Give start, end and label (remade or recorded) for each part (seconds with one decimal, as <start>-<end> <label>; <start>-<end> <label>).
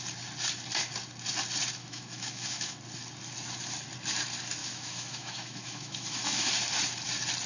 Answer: 0.0-1.8 recorded; 1.8-2.8 remade; 2.8-4.6 recorded; 4.6-6.5 remade; 6.5-7.5 recorded